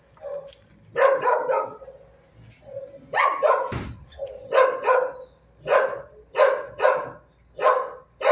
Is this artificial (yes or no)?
no